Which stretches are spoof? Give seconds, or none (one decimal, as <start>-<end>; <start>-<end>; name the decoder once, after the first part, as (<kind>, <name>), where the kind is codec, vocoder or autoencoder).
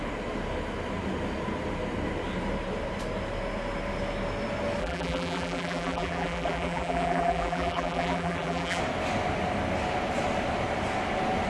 4.8-8.8 (vocoder, BigVGAN v2)